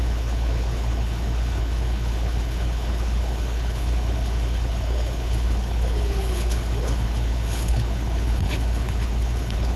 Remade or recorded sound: remade